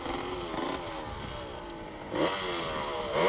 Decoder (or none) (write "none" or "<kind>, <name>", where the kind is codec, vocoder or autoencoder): none